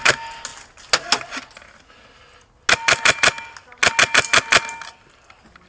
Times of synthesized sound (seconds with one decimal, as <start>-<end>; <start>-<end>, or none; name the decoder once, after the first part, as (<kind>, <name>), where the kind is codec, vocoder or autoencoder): none

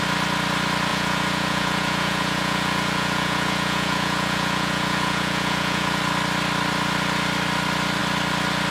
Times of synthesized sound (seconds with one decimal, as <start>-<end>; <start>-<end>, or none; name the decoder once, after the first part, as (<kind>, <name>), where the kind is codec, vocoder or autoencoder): 0.9-6.0 (vocoder, Vocos)

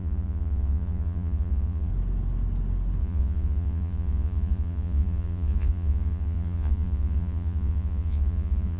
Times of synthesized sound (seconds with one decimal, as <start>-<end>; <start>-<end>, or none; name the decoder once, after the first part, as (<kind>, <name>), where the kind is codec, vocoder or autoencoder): 0.0-1.9 (vocoder, Vocos); 3.0-8.8